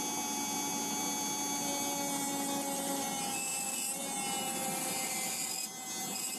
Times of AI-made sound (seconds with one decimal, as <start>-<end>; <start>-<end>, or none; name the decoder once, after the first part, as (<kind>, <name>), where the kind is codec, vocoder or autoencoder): none